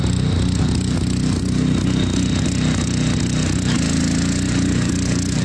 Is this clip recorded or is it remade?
recorded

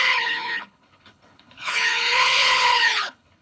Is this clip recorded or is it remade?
remade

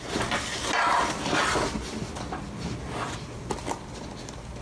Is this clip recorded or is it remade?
recorded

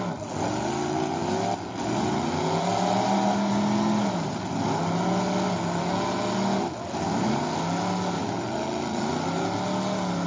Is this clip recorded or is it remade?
recorded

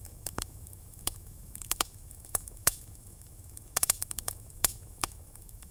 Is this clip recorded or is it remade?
remade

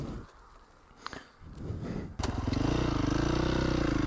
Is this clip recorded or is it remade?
recorded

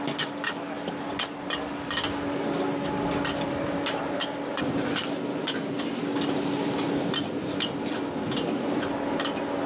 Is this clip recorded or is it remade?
recorded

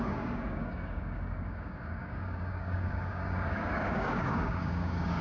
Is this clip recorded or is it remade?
remade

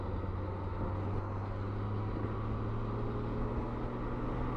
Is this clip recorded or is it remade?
recorded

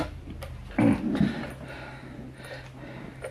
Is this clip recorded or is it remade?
recorded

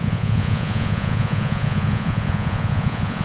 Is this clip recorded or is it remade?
remade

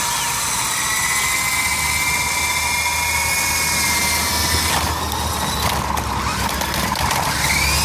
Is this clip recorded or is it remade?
recorded